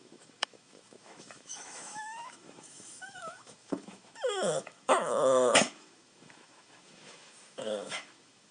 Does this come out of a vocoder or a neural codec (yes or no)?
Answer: yes